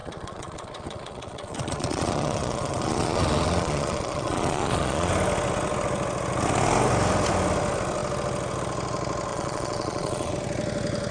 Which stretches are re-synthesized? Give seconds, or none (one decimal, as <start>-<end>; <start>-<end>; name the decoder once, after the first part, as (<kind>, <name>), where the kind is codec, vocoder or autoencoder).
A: 0.0-5.1 (vocoder, Vocos); 9.3-10.3